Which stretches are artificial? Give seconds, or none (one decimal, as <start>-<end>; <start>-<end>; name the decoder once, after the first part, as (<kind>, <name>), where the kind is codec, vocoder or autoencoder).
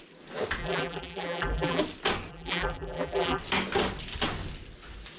0.6-1.8 (vocoder, BigVGAN v2); 2.3-3.4